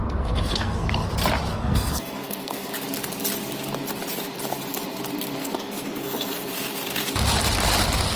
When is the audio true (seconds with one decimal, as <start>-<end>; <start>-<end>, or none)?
1.1-1.5; 2.7-5.4; 6.5-8.2

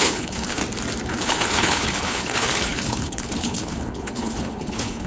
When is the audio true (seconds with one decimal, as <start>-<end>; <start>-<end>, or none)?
0.6-1.1

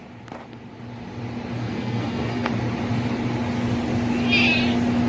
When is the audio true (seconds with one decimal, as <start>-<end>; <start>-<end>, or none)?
0.0-1.6; 2.5-5.1

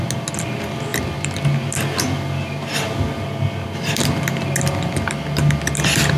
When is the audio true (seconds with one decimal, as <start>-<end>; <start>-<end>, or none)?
0.0-6.2